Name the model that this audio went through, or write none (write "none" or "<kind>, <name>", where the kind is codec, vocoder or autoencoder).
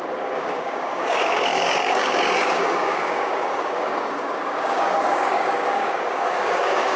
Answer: codec, DAC